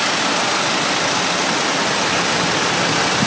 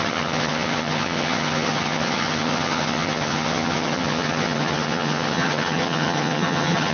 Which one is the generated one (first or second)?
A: second